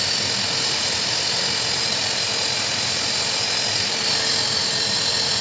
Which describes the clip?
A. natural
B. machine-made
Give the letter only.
A